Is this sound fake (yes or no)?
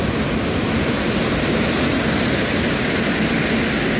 no